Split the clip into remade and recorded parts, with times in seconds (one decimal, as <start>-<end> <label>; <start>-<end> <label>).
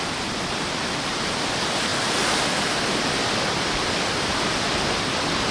0.0-5.5 recorded